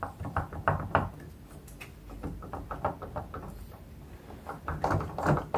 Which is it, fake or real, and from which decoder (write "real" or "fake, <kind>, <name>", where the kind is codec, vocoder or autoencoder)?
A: real